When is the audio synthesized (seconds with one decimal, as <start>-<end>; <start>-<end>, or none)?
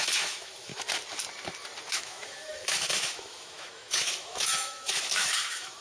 0.0-0.7; 1.9-5.8